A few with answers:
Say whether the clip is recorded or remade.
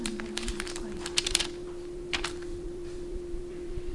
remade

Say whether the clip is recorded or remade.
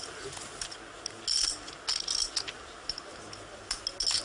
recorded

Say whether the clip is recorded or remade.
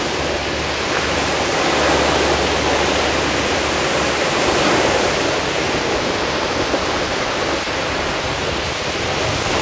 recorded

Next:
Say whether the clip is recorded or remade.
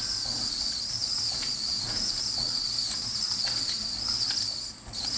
recorded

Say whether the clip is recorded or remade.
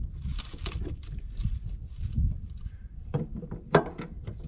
remade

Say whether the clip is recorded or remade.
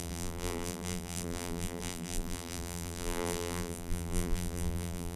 remade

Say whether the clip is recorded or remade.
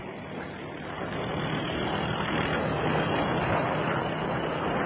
recorded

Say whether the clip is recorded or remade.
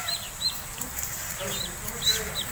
recorded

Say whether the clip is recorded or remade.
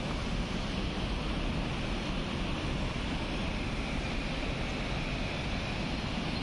remade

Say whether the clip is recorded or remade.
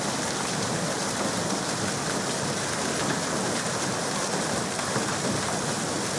recorded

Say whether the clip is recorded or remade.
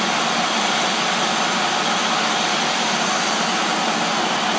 recorded